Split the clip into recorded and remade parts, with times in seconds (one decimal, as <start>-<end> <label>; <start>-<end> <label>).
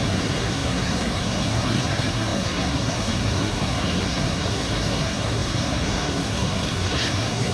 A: 0.0-7.5 remade